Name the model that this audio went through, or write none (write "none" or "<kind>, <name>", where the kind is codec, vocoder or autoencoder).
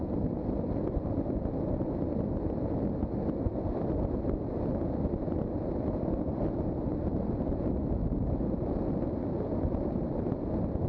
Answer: none